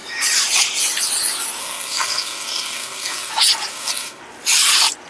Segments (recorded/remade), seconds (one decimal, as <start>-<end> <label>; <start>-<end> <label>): 0.0-1.6 recorded; 1.6-3.3 remade; 3.3-3.7 recorded; 3.7-4.2 remade; 4.2-5.1 recorded